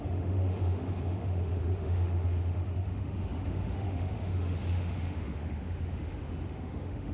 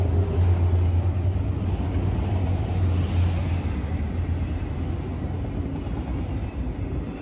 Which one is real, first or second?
second